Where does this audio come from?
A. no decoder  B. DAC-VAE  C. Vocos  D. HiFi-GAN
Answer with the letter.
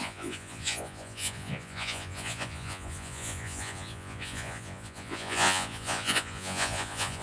C